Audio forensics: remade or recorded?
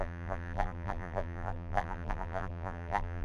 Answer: remade